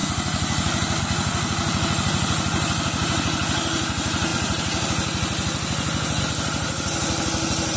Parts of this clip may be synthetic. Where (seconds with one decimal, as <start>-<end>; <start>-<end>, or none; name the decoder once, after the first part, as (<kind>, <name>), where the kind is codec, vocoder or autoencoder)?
none

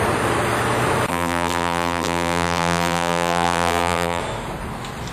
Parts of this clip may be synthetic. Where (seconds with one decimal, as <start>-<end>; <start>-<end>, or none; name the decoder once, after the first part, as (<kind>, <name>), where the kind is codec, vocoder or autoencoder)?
1.1-4.2 (vocoder, BigVGAN v2)

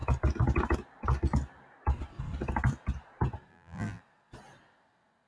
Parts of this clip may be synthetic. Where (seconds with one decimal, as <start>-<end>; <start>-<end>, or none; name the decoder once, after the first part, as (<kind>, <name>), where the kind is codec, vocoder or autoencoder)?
3.5-4.0 (vocoder, BigVGAN v2)

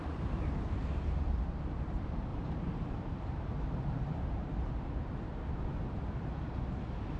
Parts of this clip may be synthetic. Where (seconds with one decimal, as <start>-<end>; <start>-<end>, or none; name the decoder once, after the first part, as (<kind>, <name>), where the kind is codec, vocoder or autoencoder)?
2.3-4.7 (vocoder, BigVGAN v2)

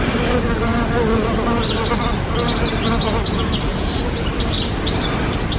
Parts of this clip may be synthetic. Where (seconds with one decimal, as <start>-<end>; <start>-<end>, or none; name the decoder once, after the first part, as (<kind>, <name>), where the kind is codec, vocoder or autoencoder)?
0.7-2.0 (vocoder, BigVGAN v2); 3.7-5.0

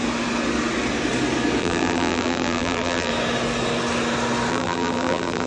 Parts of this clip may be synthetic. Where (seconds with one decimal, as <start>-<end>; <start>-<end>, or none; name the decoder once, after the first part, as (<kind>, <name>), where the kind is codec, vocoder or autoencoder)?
1.6-3.1 (vocoder, BigVGAN v2); 4.5-5.5